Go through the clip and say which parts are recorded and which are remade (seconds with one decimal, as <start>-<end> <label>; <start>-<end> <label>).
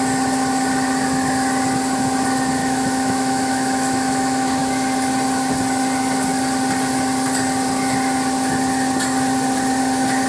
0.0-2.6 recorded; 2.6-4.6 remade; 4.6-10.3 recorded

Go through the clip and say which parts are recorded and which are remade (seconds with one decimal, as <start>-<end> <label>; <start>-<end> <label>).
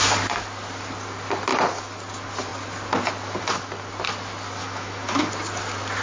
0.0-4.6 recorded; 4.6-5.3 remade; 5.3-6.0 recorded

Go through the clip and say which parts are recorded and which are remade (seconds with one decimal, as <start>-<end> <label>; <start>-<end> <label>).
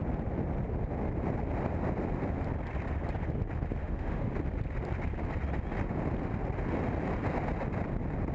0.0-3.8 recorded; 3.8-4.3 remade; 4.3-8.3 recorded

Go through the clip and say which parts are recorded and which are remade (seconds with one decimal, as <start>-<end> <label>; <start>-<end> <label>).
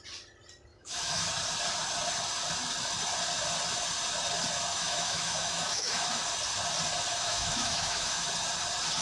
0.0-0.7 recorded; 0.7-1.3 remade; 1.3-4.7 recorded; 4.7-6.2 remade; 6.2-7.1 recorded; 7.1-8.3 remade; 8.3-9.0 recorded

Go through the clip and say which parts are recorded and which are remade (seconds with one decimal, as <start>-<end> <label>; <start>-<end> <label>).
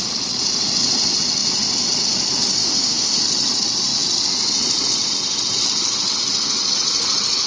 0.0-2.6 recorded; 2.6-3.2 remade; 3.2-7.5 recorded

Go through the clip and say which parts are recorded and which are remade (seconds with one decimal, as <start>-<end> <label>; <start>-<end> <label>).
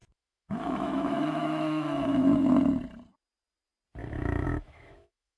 0.0-2.5 remade; 2.5-4.0 recorded; 4.0-5.4 remade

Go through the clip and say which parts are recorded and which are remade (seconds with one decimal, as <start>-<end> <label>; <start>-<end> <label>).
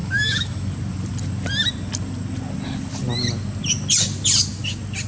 0.0-0.7 remade; 0.7-5.1 recorded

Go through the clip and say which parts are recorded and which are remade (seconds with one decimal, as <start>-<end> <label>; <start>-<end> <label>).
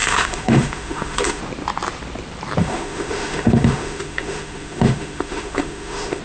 0.0-1.4 remade; 1.4-2.6 recorded; 2.6-6.2 remade